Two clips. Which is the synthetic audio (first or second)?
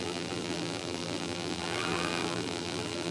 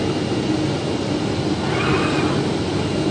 first